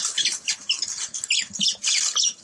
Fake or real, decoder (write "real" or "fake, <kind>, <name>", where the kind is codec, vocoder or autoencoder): real